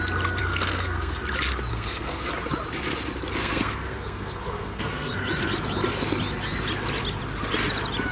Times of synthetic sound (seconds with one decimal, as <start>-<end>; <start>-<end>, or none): 0.4-1.2; 1.7-2.2; 3.4-5.1